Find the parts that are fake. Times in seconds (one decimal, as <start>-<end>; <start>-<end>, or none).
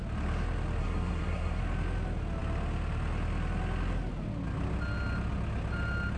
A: 0.8-1.6